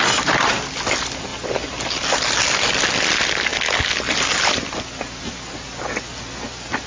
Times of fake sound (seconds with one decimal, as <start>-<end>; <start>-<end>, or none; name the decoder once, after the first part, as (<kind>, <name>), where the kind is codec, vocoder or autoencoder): none